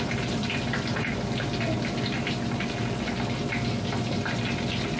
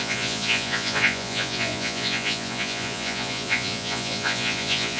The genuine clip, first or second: first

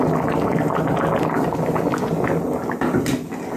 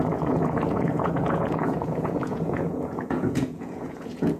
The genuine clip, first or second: first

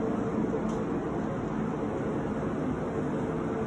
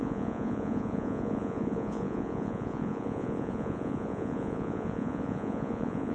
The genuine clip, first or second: first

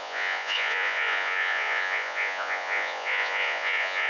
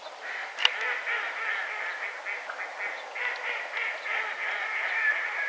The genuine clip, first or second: second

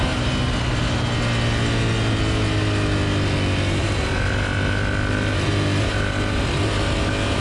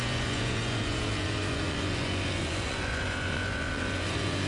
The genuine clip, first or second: first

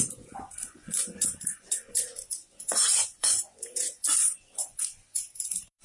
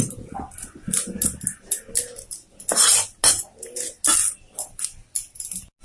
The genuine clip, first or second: second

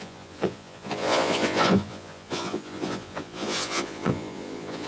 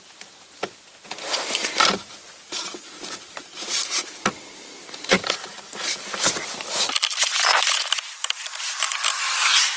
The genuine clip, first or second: second